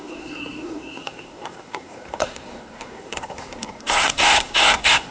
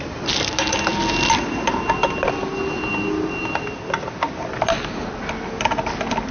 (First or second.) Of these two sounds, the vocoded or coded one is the first